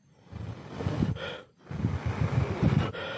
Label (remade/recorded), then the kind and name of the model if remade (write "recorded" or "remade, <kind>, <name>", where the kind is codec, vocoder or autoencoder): recorded